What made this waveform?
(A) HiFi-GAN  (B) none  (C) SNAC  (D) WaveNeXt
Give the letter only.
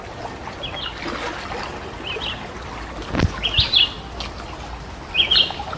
B